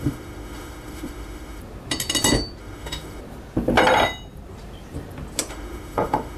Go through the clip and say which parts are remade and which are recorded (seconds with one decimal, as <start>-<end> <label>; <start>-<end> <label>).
0.0-1.6 remade; 1.6-2.6 recorded; 2.6-3.2 remade; 3.2-5.5 recorded; 5.5-6.4 remade